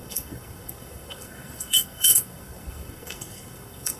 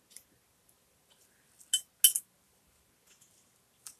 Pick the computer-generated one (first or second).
first